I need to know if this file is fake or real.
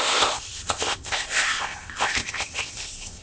fake